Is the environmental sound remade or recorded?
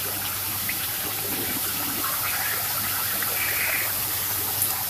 remade